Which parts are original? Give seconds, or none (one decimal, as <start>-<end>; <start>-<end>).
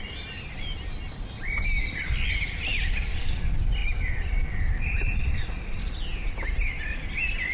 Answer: 0.0-2.7; 3.4-3.8; 5.8-7.5